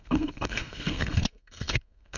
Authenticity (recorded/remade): remade